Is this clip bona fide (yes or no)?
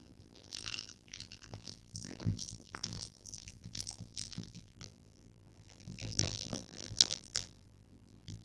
no